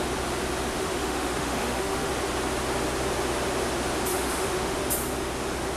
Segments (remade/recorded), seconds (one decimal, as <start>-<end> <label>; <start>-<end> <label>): 0.0-0.7 recorded; 0.7-2.1 remade; 2.1-4.1 recorded; 4.1-4.8 remade; 4.8-5.8 recorded